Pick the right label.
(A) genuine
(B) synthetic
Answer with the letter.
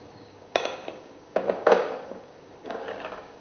B